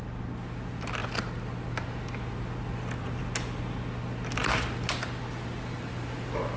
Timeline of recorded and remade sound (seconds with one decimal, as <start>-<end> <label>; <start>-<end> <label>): 0.0-6.6 recorded